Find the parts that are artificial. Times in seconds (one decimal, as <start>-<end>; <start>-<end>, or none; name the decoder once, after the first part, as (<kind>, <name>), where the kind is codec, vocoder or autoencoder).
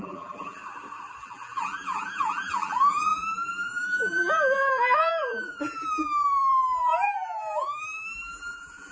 0.0-0.6 (vocoder, BigVGAN v2); 1.2-8.9